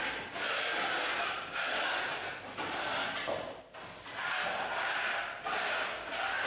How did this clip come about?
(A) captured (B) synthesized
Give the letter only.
A